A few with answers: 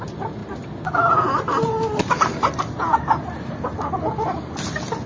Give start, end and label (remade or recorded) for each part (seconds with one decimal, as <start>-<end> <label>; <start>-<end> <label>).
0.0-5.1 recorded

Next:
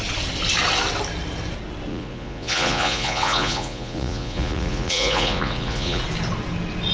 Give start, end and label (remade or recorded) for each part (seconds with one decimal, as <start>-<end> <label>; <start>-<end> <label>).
0.0-1.9 recorded; 1.9-6.0 remade; 6.0-6.9 recorded

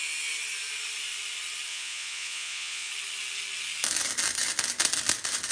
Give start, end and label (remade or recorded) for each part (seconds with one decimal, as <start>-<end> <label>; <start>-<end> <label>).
0.0-1.7 recorded; 1.7-2.9 remade; 2.9-5.5 recorded

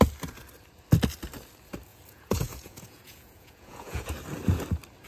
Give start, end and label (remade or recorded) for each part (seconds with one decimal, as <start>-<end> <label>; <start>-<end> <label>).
0.0-1.9 recorded; 1.9-4.1 remade; 4.1-5.1 recorded